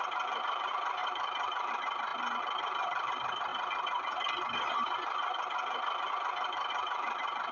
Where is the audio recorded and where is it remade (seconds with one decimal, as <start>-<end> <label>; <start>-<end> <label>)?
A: 0.0-3.5 remade; 3.5-6.7 recorded; 6.7-7.5 remade

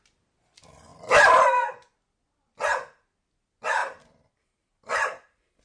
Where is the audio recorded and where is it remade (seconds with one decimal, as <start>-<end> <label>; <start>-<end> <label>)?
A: 0.0-3.8 recorded; 3.8-5.6 remade

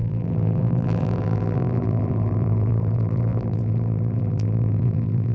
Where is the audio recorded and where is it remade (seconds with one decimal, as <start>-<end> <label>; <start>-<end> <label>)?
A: 0.0-5.3 remade

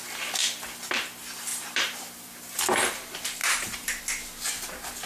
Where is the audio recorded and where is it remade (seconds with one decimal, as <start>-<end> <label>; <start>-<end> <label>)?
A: 0.0-1.5 recorded; 1.5-2.6 remade; 2.6-3.4 recorded; 3.4-4.0 remade; 4.0-5.1 recorded

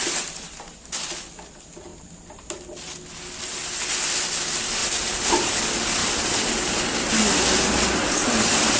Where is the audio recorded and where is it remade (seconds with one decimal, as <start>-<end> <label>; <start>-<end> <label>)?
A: 0.0-4.8 recorded; 4.8-5.6 remade; 5.6-8.8 recorded

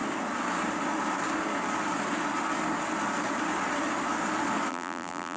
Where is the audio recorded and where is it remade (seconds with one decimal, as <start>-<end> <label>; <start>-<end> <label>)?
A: 0.0-4.7 recorded; 4.7-5.4 remade

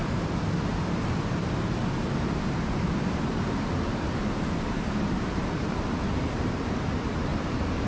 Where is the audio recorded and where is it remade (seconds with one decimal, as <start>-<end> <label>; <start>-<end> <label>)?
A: 0.0-7.9 remade